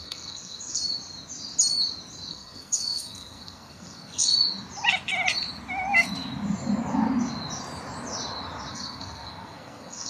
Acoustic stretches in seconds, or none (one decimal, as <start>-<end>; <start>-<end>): 0.8-2.3; 4.3-8.7